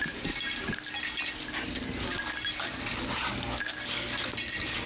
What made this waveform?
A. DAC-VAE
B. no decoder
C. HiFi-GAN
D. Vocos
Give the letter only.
B